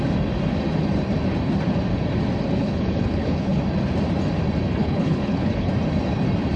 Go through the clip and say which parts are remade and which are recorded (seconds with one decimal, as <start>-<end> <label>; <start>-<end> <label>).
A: 0.0-2.6 recorded; 2.6-3.6 remade; 3.6-4.8 recorded; 4.8-5.7 remade; 5.7-6.6 recorded